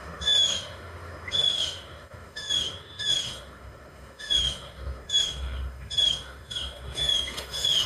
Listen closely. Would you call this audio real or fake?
fake